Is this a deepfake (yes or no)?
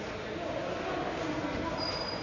no